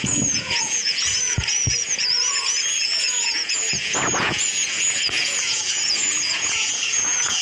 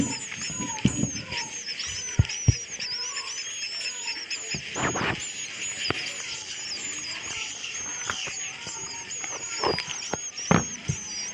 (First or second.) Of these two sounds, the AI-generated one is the first